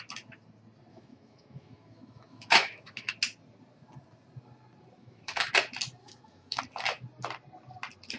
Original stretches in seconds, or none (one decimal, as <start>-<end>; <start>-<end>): 0.0-0.9; 3.1-5.0; 5.5-6.0; 6.6-8.2